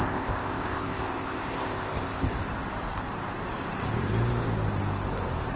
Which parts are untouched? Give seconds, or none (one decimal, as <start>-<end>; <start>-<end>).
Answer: 2.3-5.6